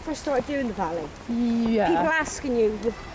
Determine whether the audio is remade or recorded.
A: recorded